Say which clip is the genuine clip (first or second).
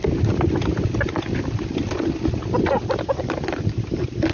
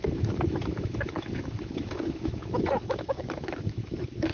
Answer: first